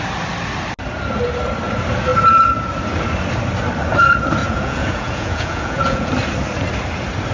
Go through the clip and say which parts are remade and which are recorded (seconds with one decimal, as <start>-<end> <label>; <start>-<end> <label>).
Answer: 0.0-4.4 recorded; 4.4-6.1 remade; 6.1-7.3 recorded